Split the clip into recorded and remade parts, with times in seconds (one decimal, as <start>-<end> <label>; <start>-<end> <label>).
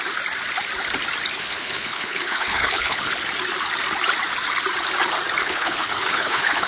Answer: 0.0-1.4 recorded; 1.4-3.1 remade; 3.1-5.4 recorded; 5.4-6.7 remade